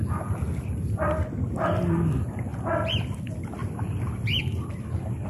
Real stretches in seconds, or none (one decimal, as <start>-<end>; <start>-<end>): 0.0-5.3